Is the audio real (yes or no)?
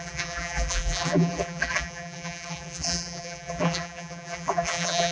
no